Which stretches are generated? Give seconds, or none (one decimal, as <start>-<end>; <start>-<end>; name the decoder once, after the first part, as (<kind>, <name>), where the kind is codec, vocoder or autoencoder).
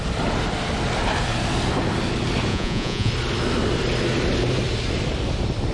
2.5-3.1 (vocoder, Vocos)